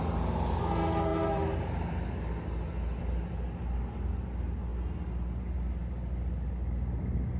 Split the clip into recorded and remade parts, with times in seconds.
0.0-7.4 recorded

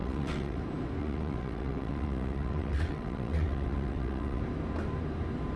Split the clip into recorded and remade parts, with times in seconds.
0.0-0.6 remade; 0.6-1.0 recorded; 1.0-4.4 remade; 4.4-5.6 recorded

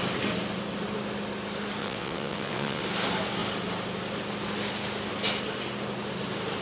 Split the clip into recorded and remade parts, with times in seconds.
0.0-1.8 recorded; 1.8-2.8 remade; 2.8-6.6 recorded

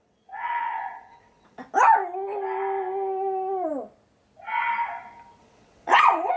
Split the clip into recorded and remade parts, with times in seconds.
0.0-1.6 remade; 1.6-5.4 recorded; 5.4-6.4 remade